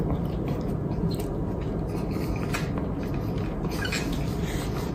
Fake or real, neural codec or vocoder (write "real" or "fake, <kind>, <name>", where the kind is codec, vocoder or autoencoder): real